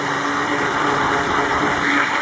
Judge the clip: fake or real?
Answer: real